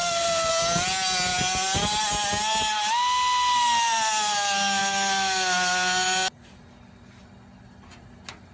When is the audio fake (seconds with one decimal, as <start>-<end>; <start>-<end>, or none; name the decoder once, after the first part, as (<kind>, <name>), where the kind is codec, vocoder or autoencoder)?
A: 0.0-0.5 (codec, SNAC)